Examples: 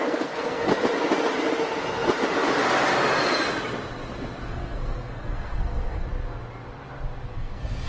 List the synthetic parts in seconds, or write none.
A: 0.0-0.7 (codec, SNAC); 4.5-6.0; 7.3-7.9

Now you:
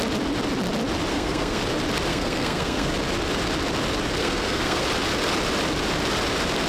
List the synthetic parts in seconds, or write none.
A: 1.1-1.6 (codec, SNAC); 2.1-2.9; 4.2-4.8

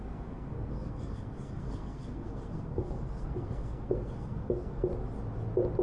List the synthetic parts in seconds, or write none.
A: 0.0-4.9 (codec, SNAC)

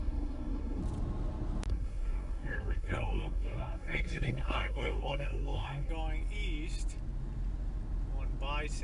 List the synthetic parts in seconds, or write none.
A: 0.0-0.8 (codec, SNAC); 1.7-5.9

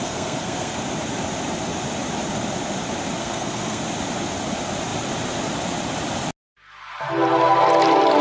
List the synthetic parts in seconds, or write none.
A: 0.0-0.8 (codec, SNAC); 3.2-3.8